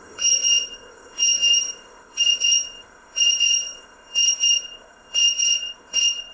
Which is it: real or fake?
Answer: fake